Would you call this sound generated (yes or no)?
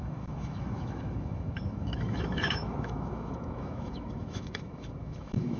yes